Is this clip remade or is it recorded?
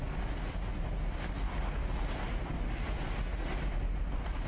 recorded